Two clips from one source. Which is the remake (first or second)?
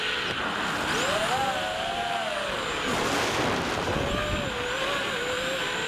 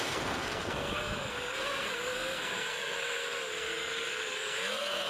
second